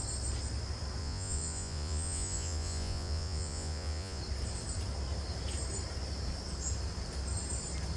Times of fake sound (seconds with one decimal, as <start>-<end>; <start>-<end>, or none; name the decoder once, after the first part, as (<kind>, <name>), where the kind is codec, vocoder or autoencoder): 1.0-4.2 (vocoder, Vocos)